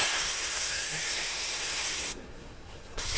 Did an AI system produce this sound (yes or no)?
yes